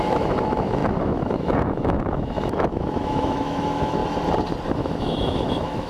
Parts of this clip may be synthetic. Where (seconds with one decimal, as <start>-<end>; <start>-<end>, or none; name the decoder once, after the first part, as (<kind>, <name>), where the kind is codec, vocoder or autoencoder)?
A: 0.0-4.0 (autoencoder, DAC-VAE); 4.7-5.9